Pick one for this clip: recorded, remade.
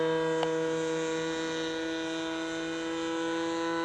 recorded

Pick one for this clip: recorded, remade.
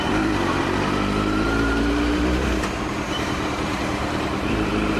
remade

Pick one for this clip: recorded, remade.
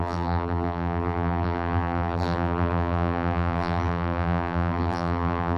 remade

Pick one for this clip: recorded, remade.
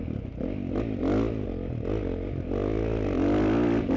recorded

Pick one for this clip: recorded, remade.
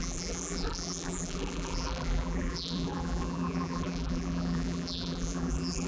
remade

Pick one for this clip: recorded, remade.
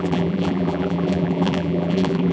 remade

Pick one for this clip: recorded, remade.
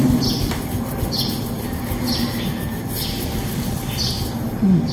recorded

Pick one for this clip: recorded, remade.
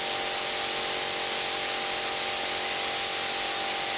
recorded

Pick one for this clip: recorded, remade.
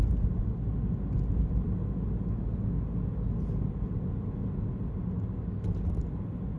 recorded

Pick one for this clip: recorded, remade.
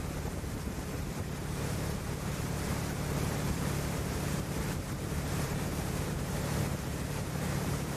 remade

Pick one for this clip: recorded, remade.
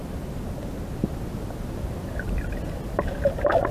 recorded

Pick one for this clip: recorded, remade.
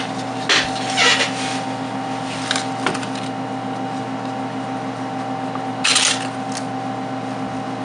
recorded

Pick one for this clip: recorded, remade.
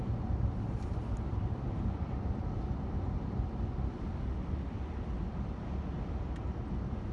recorded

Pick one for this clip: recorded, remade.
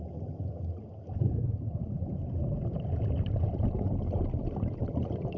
recorded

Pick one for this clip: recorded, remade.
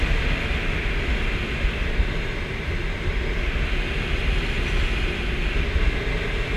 recorded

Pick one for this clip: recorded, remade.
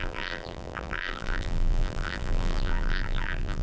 remade